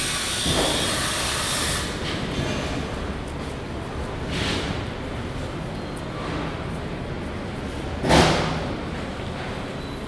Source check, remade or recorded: recorded